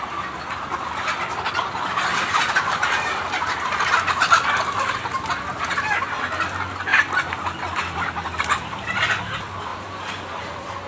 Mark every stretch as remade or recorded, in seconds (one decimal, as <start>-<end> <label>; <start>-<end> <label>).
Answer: 0.0-2.1 recorded; 2.1-4.2 remade; 4.2-9.7 recorded; 9.7-10.9 remade